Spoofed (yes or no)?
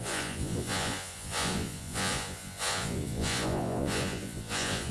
yes